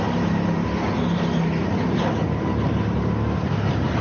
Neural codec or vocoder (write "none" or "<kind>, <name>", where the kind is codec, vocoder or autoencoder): none